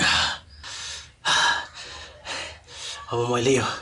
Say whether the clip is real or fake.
real